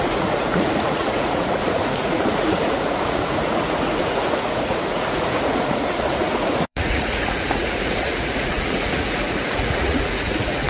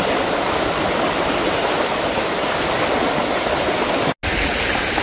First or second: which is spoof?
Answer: first